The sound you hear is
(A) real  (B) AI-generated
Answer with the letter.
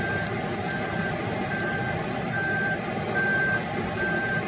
A